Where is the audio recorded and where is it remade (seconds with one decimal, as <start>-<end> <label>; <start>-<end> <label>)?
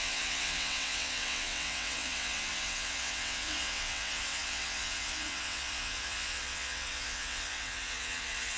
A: 0.0-8.6 remade